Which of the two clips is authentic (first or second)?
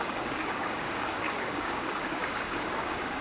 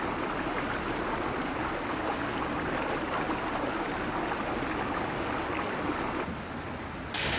second